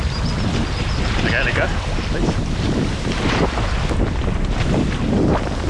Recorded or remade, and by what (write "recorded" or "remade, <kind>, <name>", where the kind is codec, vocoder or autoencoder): recorded